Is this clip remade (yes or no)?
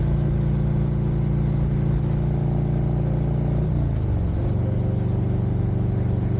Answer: no